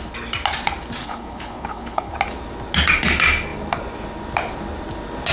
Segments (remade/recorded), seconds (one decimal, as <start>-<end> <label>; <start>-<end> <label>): 0.0-1.0 recorded; 1.0-2.1 remade; 2.1-5.3 recorded